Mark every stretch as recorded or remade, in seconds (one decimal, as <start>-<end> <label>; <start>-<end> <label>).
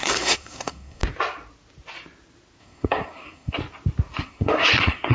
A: 0.0-1.0 remade; 1.0-2.6 recorded; 2.6-3.6 remade; 3.6-4.2 recorded; 4.2-5.1 remade